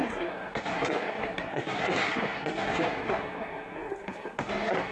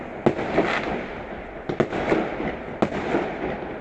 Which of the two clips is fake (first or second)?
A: first